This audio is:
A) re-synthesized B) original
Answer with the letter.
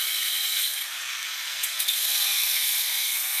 A